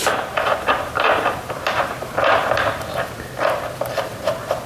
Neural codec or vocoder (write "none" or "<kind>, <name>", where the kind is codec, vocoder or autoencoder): vocoder, BigVGAN v2